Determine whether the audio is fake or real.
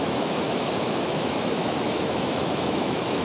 fake